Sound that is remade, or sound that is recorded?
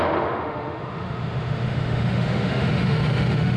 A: remade